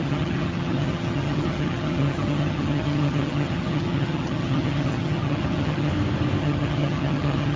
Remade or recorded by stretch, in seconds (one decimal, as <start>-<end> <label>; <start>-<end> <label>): 0.0-5.9 remade; 5.9-6.4 recorded; 6.4-7.6 remade